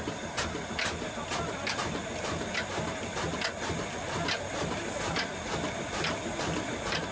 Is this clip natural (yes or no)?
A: yes